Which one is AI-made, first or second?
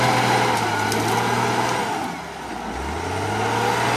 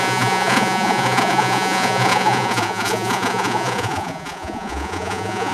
second